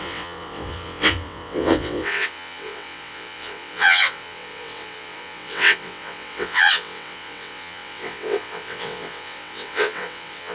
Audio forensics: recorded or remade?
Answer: remade